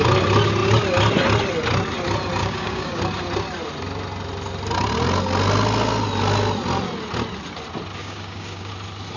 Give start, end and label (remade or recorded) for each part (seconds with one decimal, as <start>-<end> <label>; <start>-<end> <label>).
0.0-2.4 recorded; 2.4-3.0 remade; 3.0-8.0 recorded; 8.0-8.7 remade; 8.7-9.2 recorded

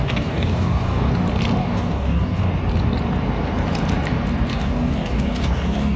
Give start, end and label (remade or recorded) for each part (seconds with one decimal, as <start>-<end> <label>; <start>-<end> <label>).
0.0-1.1 remade; 1.1-1.6 recorded; 1.6-2.5 remade; 2.5-4.5 recorded; 4.5-6.0 remade